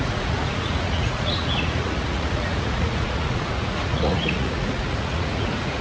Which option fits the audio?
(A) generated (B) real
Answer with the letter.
A